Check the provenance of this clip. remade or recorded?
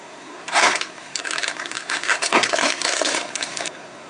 remade